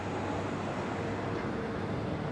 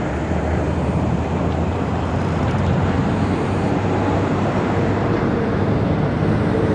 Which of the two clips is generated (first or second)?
second